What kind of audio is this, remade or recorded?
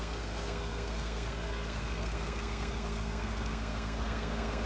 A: remade